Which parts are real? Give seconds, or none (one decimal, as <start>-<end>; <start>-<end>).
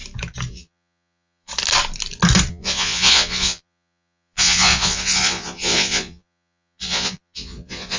0.0-0.5; 1.5-2.5